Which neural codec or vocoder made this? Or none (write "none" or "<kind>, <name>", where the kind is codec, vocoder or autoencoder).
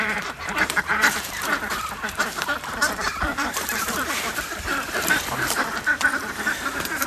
vocoder, BigVGAN v2